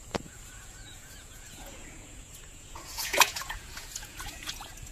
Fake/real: fake